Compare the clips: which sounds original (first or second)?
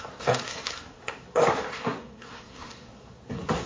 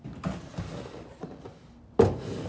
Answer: second